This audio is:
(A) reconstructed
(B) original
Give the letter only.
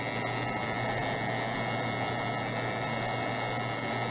B